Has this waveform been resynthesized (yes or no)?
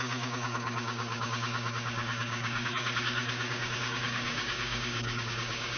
yes